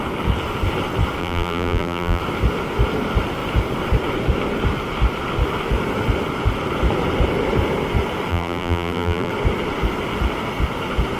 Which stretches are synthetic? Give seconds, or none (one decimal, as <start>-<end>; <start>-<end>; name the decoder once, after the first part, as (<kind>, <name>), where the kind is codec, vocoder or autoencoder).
1.2-2.2 (vocoder, BigVGAN v2); 8.3-9.3